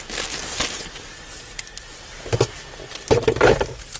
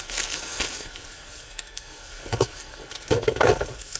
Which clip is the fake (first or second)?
second